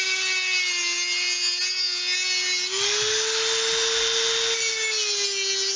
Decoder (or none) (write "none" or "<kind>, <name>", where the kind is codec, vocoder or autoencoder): none